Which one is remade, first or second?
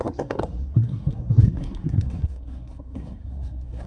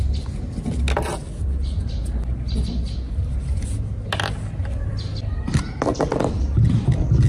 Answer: first